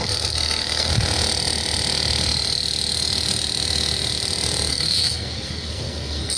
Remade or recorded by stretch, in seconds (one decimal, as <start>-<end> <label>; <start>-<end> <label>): 0.0-0.9 remade; 0.9-4.7 recorded; 4.7-6.4 remade